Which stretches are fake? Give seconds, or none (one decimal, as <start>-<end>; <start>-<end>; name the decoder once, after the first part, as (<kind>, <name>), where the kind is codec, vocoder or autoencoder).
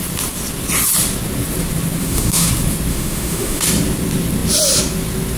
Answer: 2.0-2.5 (autoencoder, DAC-VAE); 2.9-3.6